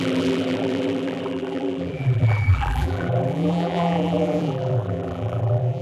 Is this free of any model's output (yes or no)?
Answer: no